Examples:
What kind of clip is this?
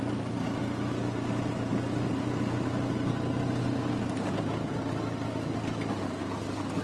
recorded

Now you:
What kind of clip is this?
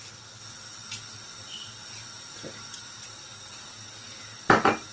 recorded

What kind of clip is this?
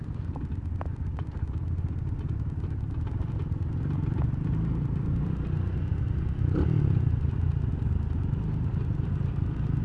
recorded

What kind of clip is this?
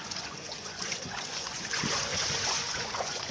remade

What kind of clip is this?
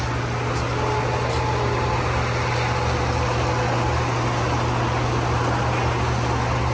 recorded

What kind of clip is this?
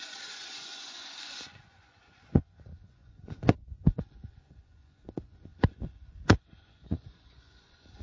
remade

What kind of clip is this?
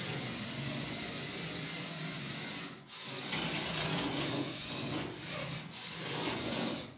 remade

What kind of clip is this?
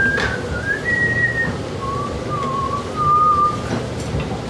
recorded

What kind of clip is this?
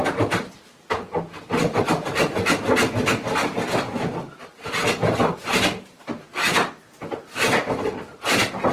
recorded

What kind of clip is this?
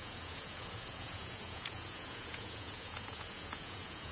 remade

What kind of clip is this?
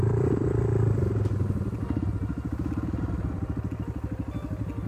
remade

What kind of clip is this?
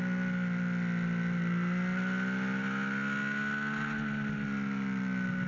recorded